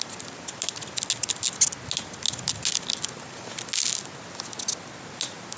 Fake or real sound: real